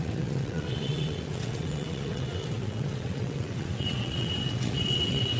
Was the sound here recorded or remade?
remade